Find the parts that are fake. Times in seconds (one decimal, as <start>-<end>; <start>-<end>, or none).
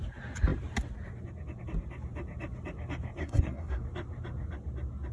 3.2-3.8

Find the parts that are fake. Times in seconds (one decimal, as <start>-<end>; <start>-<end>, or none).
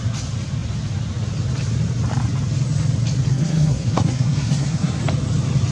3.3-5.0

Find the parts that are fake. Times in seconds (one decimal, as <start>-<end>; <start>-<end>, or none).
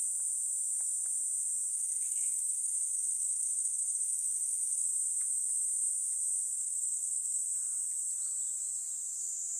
1.7-4.9; 6.5-7.4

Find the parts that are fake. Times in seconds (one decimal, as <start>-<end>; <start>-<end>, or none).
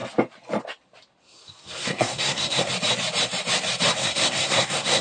1.2-2.7; 4.0-5.0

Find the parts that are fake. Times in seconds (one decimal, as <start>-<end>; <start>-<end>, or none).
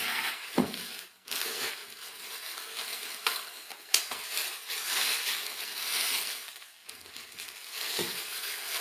0.0-8.8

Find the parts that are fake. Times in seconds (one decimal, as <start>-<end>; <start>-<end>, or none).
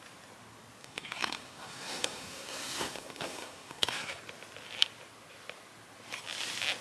0.8-4.2